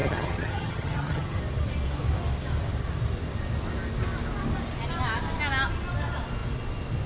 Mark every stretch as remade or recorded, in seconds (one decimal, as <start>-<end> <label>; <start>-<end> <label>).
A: 0.0-1.4 remade; 1.4-7.1 recorded